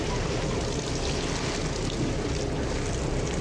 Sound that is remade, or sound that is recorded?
recorded